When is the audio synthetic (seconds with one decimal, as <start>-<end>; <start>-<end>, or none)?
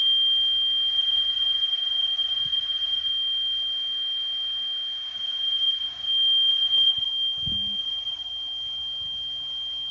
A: 0.9-3.1; 5.1-6.1; 6.5-7.1; 7.8-8.3